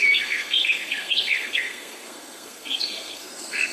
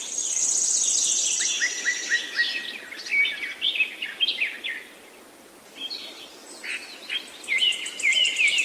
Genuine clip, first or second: second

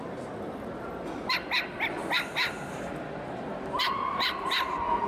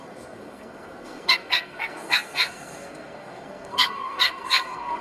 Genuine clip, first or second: first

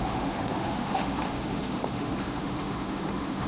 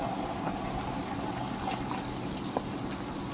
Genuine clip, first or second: second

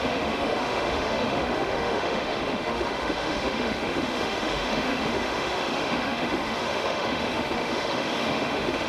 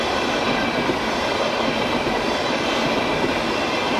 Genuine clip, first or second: second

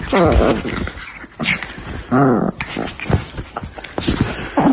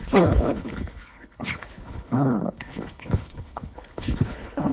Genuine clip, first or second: first